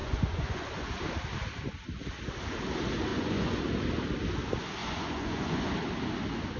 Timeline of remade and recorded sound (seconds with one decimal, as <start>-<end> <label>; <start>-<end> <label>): 0.0-0.9 remade; 0.9-3.1 recorded; 3.1-3.6 remade; 3.6-4.8 recorded; 4.8-5.7 remade; 5.7-6.6 recorded